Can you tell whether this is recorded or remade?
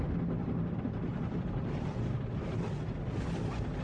recorded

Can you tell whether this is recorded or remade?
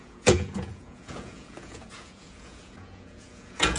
remade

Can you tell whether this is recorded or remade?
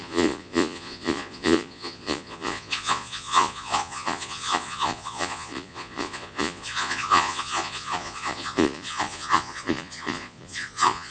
remade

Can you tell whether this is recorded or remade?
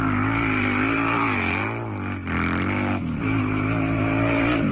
recorded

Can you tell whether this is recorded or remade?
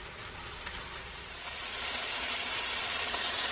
remade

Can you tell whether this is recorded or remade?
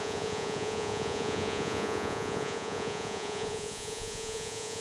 remade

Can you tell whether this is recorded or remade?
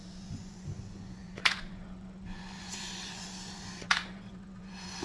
remade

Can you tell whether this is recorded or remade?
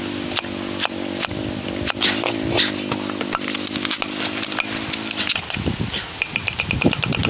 recorded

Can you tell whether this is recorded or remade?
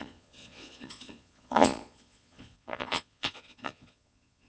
remade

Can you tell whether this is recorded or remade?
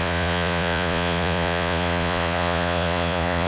remade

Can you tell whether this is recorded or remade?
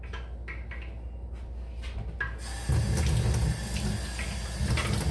recorded